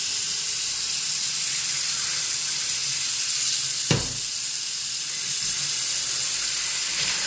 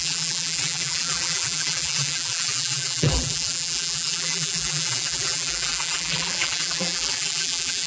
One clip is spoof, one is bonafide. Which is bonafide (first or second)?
first